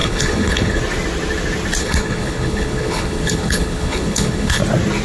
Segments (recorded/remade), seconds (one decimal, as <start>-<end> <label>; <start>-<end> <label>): 0.0-0.8 remade; 0.8-1.8 recorded; 1.8-4.6 remade; 4.6-5.0 recorded